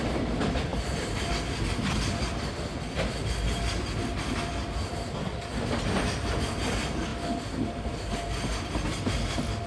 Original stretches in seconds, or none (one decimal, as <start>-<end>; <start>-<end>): 0.0-9.7